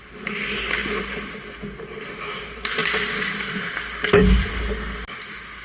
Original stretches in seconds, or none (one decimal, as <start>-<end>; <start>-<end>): 0.0-5.6